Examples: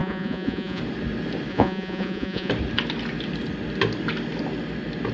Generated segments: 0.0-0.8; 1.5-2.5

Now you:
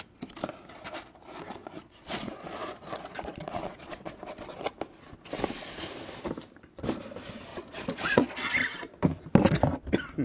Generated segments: 2.0-4.1; 7.5-8.5